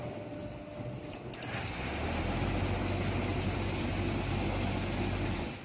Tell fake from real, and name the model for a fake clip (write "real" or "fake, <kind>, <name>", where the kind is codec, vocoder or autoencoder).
real